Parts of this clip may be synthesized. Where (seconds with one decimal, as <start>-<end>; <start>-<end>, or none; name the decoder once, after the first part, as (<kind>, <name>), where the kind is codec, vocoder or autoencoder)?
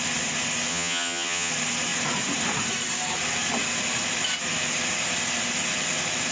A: 0.7-1.5 (vocoder, HiFi-GAN)